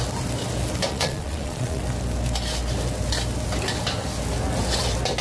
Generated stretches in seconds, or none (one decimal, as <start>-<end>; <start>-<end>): 0.9-1.8